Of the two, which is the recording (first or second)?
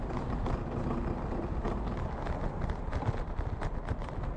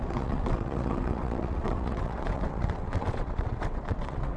first